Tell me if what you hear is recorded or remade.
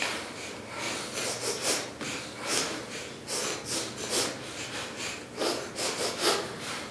recorded